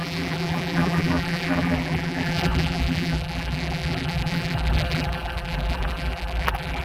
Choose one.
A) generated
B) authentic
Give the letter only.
A